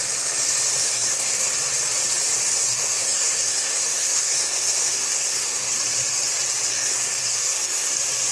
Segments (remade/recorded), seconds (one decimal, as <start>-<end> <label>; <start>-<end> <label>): 0.0-0.8 recorded; 0.8-1.5 remade; 1.5-2.6 recorded; 2.6-5.8 remade; 5.8-6.7 recorded; 6.7-7.9 remade; 7.9-8.3 recorded